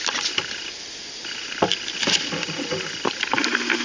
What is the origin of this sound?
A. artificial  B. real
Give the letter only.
B